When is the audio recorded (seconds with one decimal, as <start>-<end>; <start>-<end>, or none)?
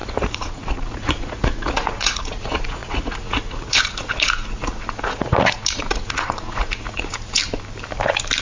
7.4-8.4